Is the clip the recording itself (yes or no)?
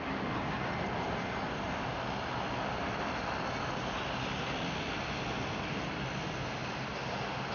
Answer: yes